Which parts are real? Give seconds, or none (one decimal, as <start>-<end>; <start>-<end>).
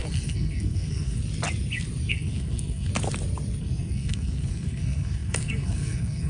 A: 1.2-2.1; 2.9-3.6